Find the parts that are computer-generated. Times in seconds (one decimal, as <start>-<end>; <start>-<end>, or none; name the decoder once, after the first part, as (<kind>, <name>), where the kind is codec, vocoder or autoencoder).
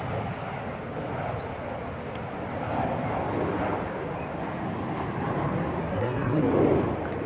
5.8-6.5 (codec, SNAC)